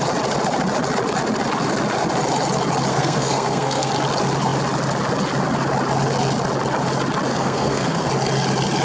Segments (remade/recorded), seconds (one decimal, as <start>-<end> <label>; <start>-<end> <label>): 0.0-2.9 recorded; 2.9-3.9 remade; 3.9-7.3 recorded; 7.3-8.1 remade; 8.1-8.8 recorded